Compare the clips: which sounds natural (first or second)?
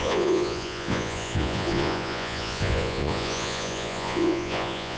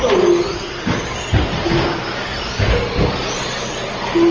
second